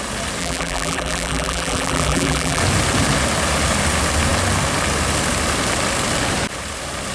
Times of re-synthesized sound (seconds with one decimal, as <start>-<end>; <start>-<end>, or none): 0.4-2.6